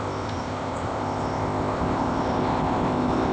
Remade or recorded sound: remade